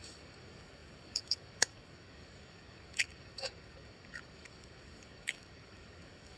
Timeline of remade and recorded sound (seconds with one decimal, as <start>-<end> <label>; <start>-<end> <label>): 0.0-6.4 remade

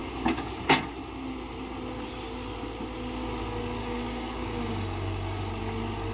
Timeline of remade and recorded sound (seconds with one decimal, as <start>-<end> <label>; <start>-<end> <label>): 0.0-3.8 recorded; 3.8-5.5 remade; 5.5-6.1 recorded

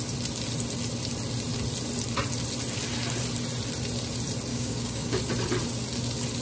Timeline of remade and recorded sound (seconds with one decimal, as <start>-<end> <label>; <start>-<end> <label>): 0.0-4.5 recorded; 4.5-5.2 remade; 5.2-6.4 recorded

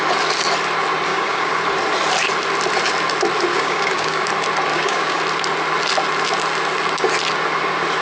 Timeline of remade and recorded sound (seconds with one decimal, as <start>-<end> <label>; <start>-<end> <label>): 0.0-1.1 recorded; 1.1-1.6 remade; 1.6-3.5 recorded; 3.5-4.3 remade; 4.3-4.7 recorded; 4.7-5.2 remade; 5.2-8.0 recorded

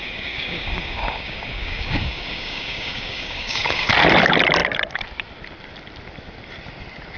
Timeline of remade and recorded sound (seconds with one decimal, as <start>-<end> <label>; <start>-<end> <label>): 0.0-3.9 remade; 3.9-7.2 recorded

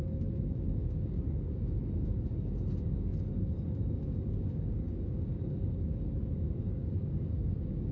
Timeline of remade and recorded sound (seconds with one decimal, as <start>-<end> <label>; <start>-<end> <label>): 0.0-7.9 remade

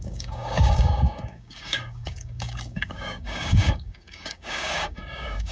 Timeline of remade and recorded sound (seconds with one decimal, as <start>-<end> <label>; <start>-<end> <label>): 0.0-5.5 remade

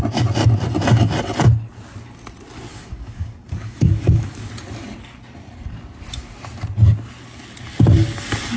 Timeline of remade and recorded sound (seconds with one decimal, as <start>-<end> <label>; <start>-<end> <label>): 0.0-2.7 recorded; 2.7-4.5 remade; 4.5-8.6 recorded